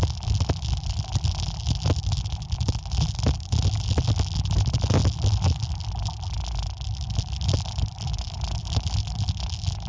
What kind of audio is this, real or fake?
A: real